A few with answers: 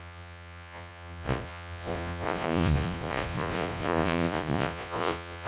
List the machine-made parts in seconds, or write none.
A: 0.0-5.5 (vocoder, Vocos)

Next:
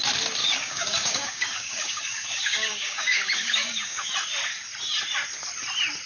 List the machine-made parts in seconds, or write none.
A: 0.4-4.1 (codec, DAC)

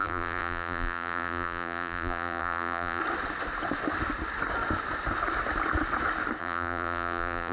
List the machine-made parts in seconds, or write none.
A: 0.0-3.0 (vocoder, BigVGAN v2); 6.4-7.5

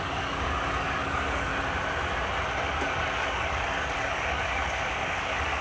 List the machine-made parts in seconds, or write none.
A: 0.0-1.5 (codec, DAC); 2.6-5.6

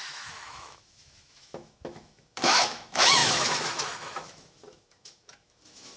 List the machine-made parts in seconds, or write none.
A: 0.0-6.0 (autoencoder, DAC-VAE)

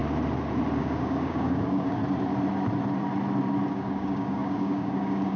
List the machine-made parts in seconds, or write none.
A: 0.8-2.0 (codec, DAC); 3.7-5.4

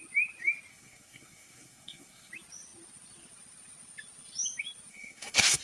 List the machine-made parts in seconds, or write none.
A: 0.7-2.3 (codec, SNAC); 4.9-5.6